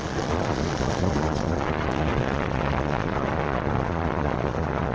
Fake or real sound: fake